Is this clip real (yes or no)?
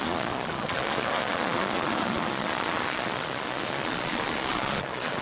no